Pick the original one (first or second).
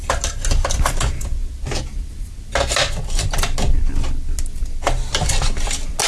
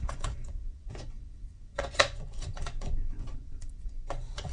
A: first